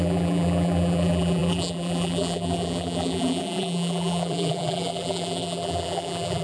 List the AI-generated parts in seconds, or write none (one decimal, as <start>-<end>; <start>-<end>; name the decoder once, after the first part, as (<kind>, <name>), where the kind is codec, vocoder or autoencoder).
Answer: 0.0-6.4 (vocoder, BigVGAN v2)